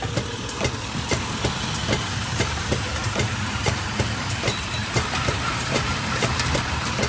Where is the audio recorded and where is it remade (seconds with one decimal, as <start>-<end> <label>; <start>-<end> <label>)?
0.0-2.2 recorded; 2.2-7.1 remade